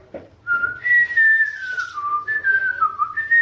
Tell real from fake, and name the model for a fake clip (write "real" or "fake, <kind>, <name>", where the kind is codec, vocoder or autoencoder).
real